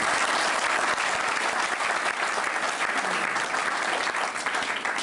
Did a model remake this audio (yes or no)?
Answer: no